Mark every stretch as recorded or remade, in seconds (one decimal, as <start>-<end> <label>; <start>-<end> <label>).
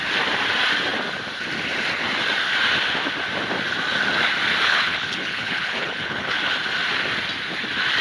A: 0.0-4.6 recorded; 4.6-6.4 remade; 6.4-8.0 recorded